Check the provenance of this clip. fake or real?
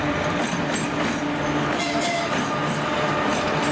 real